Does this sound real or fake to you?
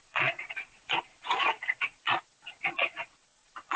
fake